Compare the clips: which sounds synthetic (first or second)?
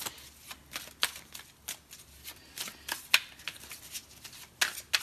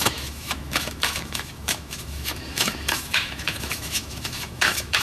second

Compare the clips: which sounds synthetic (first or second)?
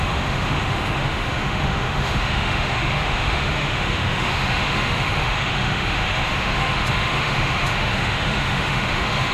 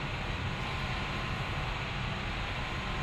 first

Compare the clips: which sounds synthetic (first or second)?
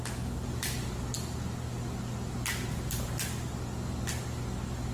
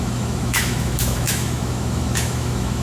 second